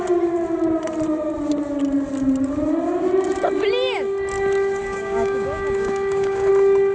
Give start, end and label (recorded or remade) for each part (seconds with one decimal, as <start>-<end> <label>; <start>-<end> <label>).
0.0-4.8 recorded; 4.8-6.5 remade; 6.5-6.9 recorded